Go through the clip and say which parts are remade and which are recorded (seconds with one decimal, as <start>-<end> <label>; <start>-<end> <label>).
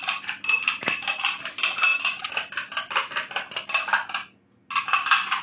0.0-5.4 recorded